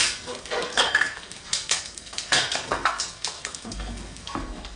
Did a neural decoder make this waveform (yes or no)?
yes